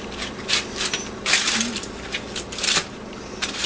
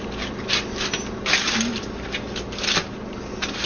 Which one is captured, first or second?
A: second